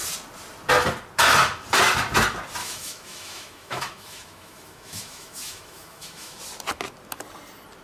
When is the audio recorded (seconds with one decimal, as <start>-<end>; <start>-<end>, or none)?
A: 0.0-2.6; 6.4-7.8

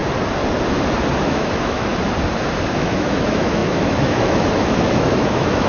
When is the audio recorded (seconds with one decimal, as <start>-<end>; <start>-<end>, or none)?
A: 0.0-1.2; 1.9-2.7

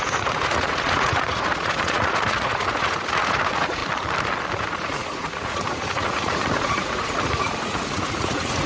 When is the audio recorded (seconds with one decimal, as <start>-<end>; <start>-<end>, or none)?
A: 3.8-4.6

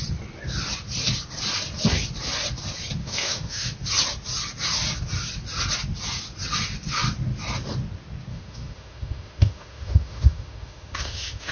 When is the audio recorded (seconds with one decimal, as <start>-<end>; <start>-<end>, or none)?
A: 0.0-3.0; 3.7-8.3

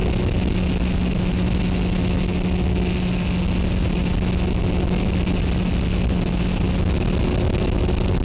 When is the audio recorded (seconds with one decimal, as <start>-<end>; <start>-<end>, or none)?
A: 0.0-8.2

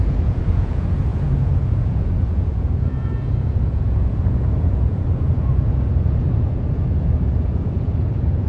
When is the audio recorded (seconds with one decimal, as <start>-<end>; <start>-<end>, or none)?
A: none

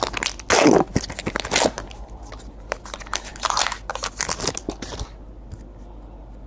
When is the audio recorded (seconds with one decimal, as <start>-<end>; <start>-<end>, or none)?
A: 0.0-6.5